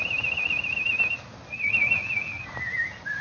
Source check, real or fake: real